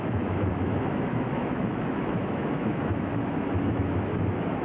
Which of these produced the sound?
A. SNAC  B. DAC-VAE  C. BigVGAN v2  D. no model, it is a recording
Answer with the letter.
B